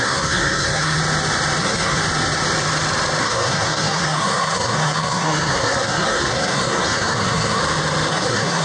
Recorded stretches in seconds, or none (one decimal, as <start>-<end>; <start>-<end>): 1.0-1.6; 2.0-3.2; 7.6-8.1